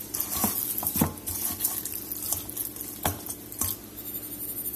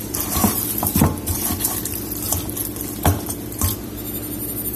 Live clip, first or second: first